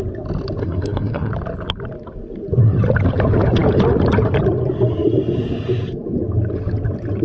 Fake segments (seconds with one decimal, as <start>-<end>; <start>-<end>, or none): 0.6-1.3